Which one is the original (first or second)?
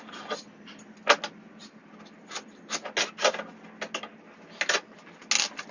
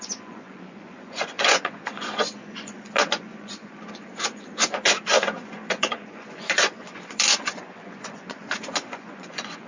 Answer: first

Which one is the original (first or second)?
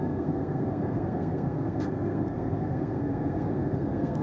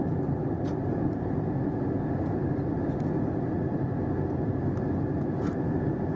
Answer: second